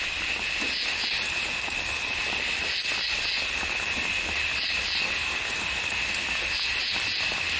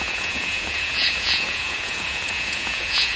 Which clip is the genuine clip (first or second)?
first